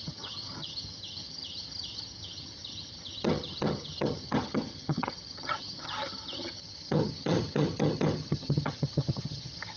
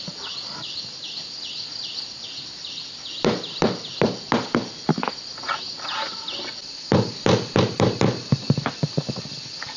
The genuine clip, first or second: second